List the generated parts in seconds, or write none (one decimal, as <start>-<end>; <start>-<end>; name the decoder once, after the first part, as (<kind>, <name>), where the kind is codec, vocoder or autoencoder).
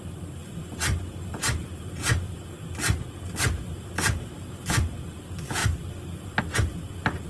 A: none